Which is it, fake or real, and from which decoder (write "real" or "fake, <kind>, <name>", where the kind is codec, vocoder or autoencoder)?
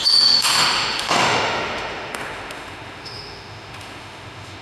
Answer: fake, autoencoder, DAC-VAE